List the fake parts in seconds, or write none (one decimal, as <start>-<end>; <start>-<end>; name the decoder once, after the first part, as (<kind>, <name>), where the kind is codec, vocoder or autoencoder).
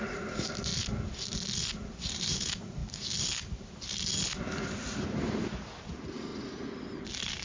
0.0-0.7 (vocoder, BigVGAN v2); 1.9-2.8; 5.0-6.3